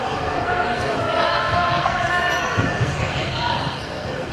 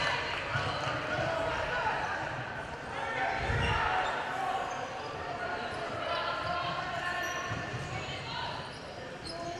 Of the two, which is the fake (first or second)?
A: first